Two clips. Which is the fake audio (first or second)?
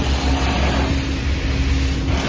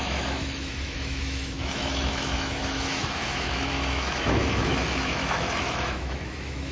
second